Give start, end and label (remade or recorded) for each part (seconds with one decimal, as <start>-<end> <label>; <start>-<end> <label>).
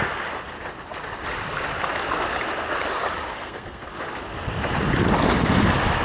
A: 0.0-3.3 recorded; 3.3-3.8 remade; 3.8-6.0 recorded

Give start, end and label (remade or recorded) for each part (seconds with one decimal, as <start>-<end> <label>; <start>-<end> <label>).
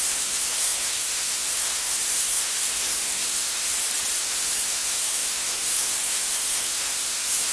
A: 0.0-3.7 remade; 3.7-4.2 recorded; 4.2-7.5 remade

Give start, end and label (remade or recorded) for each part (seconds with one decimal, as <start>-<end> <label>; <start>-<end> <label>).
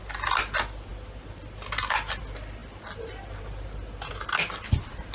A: 0.0-5.1 recorded